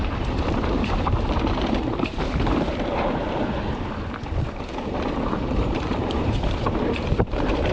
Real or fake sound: fake